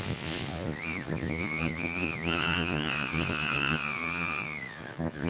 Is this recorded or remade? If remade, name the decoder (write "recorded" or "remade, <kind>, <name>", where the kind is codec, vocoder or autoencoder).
remade, vocoder, Vocos